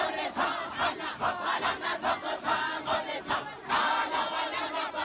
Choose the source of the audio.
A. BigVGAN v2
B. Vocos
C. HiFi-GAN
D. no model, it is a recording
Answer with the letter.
D